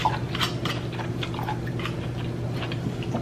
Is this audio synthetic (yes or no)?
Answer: no